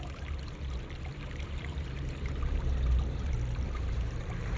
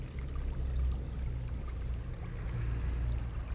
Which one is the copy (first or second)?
first